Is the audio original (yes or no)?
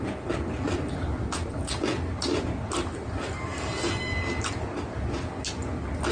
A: yes